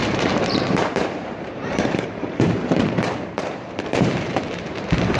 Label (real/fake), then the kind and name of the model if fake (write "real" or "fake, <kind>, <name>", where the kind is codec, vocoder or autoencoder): fake, vocoder, BigVGAN v2